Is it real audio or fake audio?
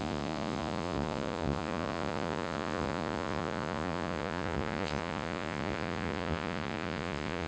fake